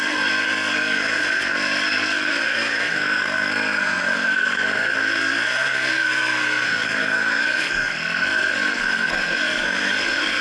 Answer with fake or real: fake